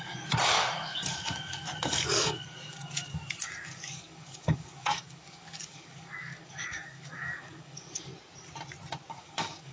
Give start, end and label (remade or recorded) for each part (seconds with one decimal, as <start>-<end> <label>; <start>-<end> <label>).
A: 0.0-8.1 remade; 8.1-9.1 recorded; 9.1-9.7 remade